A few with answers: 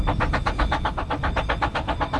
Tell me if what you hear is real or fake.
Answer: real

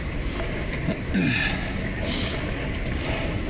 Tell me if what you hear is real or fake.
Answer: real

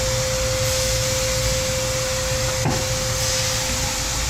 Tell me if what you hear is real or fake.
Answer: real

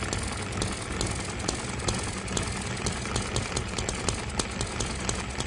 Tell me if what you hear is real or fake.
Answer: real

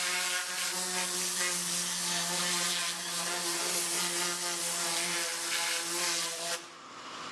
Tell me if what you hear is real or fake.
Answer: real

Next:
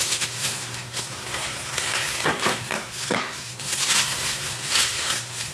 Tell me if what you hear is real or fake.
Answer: fake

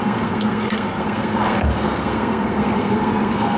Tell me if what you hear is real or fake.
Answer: fake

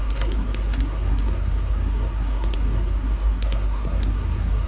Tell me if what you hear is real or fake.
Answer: fake